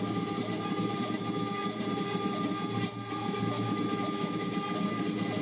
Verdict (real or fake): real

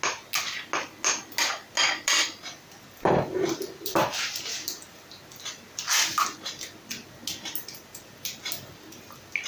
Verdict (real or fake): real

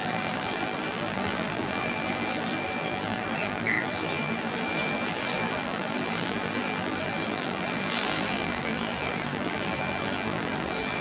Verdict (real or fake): fake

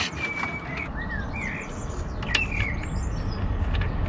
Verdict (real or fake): real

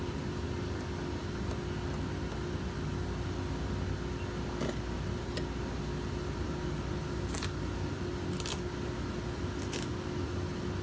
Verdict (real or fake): real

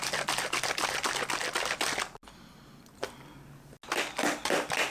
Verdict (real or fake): real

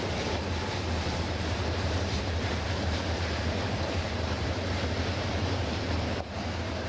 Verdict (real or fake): fake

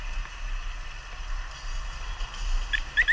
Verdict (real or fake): real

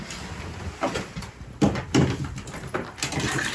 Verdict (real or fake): real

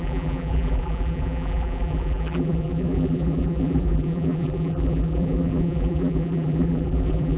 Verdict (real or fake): fake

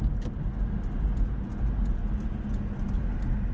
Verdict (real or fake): real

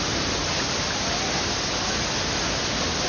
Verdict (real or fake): real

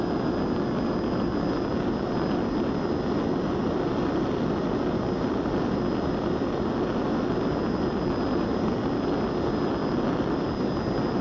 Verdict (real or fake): real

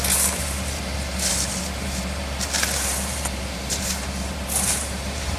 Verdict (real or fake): fake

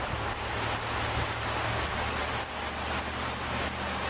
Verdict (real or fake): fake